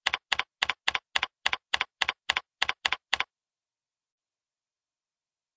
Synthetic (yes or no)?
no